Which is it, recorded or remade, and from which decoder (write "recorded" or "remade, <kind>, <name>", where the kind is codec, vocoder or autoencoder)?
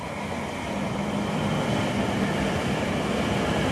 recorded